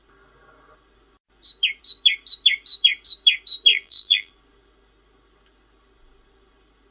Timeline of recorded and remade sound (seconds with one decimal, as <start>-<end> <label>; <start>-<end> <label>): 0.0-3.7 recorded; 3.7-4.3 remade; 4.3-6.9 recorded